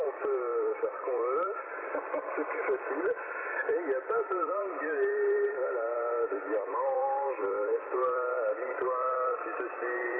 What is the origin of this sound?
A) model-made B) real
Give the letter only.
A